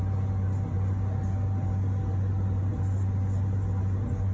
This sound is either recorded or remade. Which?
recorded